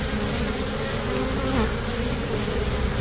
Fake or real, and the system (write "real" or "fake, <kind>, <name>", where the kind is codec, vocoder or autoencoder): real